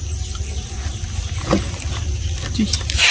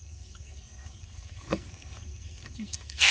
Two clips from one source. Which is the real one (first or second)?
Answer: first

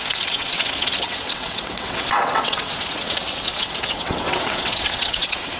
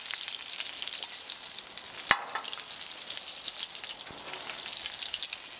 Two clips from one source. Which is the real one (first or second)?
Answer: second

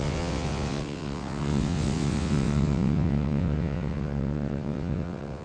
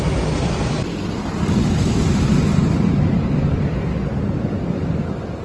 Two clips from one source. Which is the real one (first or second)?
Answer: second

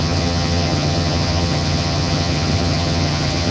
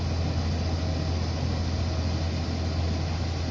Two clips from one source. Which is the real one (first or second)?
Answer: second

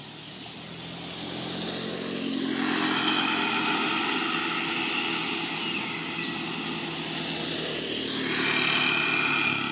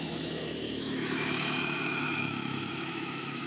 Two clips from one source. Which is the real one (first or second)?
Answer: first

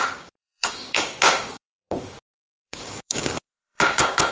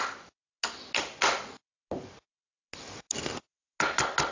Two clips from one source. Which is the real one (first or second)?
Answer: second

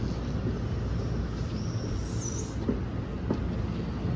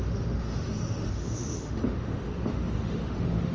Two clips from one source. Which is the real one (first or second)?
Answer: first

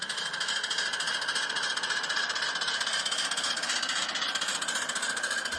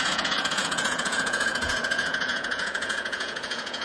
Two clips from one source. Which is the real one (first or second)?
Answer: first